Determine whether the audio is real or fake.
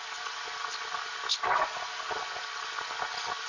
real